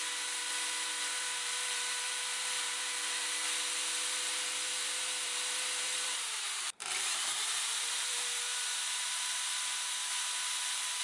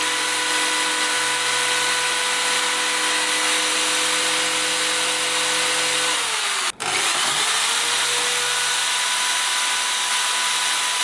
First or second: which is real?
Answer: second